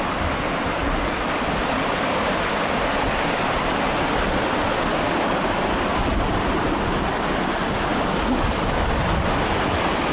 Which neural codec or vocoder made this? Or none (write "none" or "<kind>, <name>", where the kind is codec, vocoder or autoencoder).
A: none